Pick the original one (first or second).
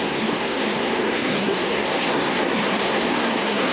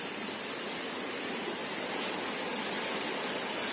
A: second